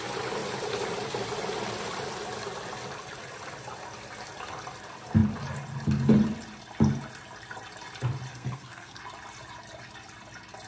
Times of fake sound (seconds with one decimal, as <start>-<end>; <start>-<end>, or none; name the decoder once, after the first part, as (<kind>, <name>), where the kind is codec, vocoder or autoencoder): 8.3-9.0 (codec, SNAC)